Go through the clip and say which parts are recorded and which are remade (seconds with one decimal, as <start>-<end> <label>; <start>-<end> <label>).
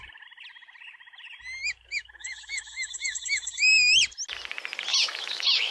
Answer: 0.0-1.6 recorded; 1.6-4.0 remade; 4.0-4.9 recorded; 4.9-5.7 remade